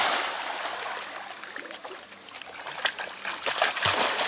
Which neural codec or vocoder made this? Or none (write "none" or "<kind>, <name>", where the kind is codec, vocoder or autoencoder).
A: none